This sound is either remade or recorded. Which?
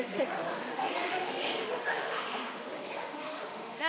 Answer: remade